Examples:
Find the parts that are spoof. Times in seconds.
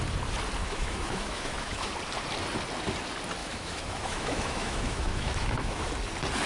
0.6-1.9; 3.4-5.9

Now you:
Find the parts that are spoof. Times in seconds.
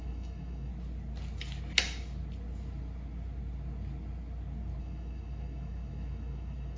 0.0-0.7; 4.8-6.8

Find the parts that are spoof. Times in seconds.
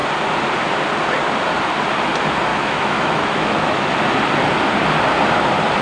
2.5-3.9